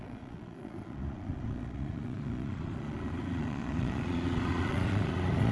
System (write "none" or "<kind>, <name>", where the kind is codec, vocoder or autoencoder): vocoder, Vocos